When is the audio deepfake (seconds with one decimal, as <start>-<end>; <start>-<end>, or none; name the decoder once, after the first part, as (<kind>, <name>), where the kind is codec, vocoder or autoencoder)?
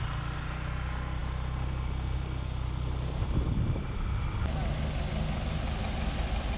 none